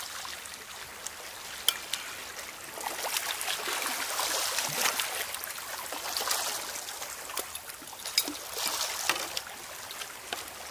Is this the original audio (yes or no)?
yes